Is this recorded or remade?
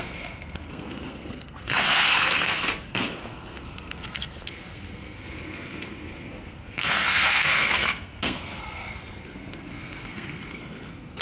remade